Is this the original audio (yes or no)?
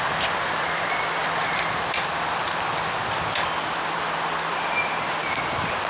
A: yes